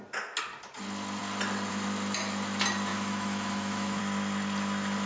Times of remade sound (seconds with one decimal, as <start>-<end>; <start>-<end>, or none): 2.9-4.0